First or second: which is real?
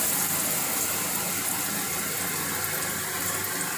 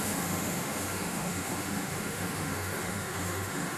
first